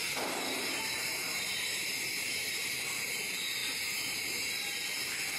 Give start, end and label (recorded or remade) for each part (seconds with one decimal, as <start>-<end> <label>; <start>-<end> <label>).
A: 0.0-3.2 remade; 3.2-3.6 recorded; 3.6-4.5 remade; 4.5-5.4 recorded

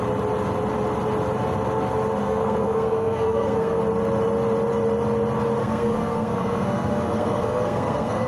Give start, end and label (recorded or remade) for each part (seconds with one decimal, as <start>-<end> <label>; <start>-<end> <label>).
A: 0.0-2.2 recorded; 2.2-3.8 remade; 3.8-5.6 recorded; 5.6-8.3 remade

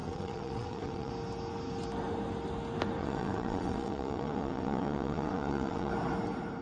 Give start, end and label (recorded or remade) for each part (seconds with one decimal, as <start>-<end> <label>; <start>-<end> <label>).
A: 0.0-1.1 remade; 1.1-3.0 recorded; 3.0-5.9 remade; 5.9-6.6 recorded

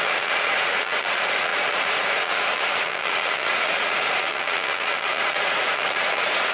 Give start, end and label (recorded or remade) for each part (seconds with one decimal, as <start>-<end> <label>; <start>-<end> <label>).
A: 0.0-6.5 remade

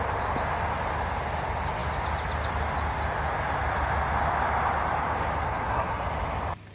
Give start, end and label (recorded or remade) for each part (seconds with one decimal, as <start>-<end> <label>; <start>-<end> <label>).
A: 0.0-5.4 recorded; 5.4-6.0 remade; 6.0-6.7 recorded

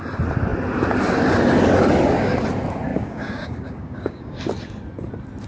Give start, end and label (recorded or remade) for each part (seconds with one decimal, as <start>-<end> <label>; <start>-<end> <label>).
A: 0.0-2.9 recorded; 2.9-4.4 remade; 4.4-5.5 recorded

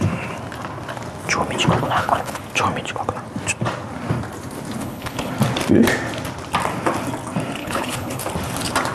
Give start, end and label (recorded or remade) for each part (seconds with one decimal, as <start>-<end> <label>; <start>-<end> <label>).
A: 0.0-1.8 recorded; 1.8-2.4 remade; 2.4-4.8 recorded; 4.8-5.3 remade; 5.3-7.6 recorded; 7.6-8.2 remade; 8.2-8.9 recorded

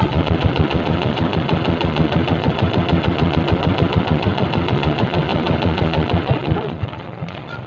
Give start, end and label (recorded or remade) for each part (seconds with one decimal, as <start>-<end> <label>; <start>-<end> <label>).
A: 0.0-7.7 remade